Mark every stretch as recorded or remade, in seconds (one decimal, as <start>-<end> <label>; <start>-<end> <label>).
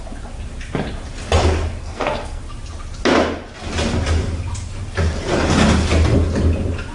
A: 0.0-1.8 recorded; 1.8-2.4 remade; 2.4-6.9 recorded